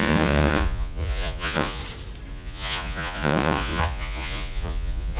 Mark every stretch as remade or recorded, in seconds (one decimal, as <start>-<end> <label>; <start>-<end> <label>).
0.0-1.8 remade; 1.8-2.3 recorded; 2.3-5.2 remade